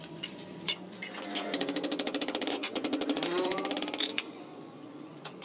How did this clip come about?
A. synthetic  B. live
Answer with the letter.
A